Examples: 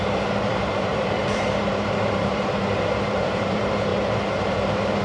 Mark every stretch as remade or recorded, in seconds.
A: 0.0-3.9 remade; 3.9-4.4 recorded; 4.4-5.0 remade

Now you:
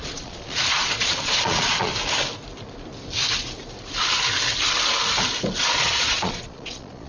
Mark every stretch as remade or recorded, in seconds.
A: 0.0-1.9 remade; 1.9-5.6 recorded; 5.6-7.1 remade

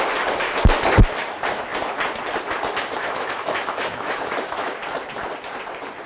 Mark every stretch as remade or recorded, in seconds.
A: 0.0-3.0 recorded; 3.0-4.8 remade; 4.8-6.1 recorded

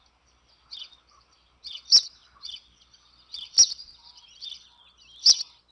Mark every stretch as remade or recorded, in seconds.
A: 0.0-2.2 recorded; 2.2-4.8 remade; 4.8-5.7 recorded

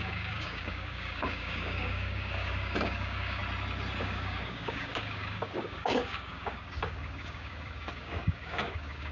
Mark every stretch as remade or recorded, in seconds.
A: 0.0-3.4 remade; 3.4-4.0 recorded; 4.0-9.1 remade

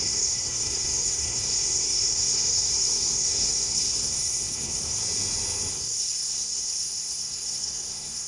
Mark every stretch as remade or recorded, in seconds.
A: 0.0-5.0 remade; 5.0-5.7 recorded; 5.7-8.3 remade